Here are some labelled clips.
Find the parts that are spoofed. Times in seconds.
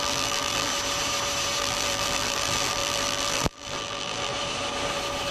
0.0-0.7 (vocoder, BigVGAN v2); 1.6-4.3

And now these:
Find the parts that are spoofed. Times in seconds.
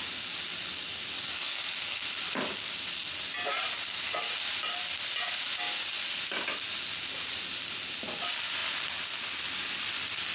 none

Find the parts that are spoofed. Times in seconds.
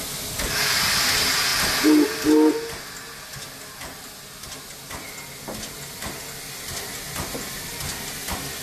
none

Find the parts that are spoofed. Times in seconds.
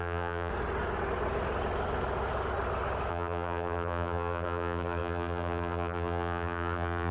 0.0-0.5 (vocoder, BigVGAN v2); 3.1-7.1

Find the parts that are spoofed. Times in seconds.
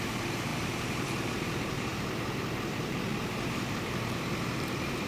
0.0-1.9 (vocoder, BigVGAN v2); 2.7-5.1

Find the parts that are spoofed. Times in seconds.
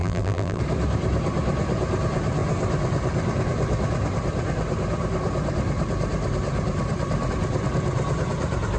0.0-0.6 (vocoder, BigVGAN v2)